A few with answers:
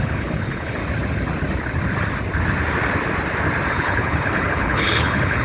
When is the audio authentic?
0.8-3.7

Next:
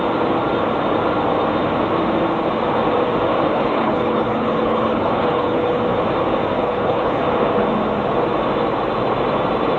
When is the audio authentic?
0.0-3.5; 5.8-6.6; 7.2-9.8

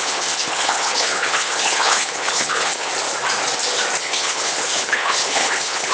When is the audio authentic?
2.9-4.0